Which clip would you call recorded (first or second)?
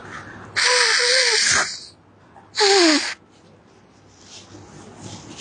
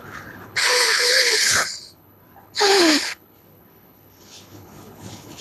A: first